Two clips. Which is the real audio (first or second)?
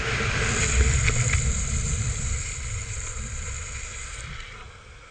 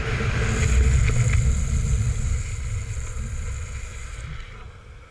second